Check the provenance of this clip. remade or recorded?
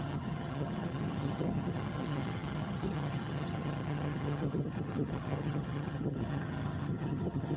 remade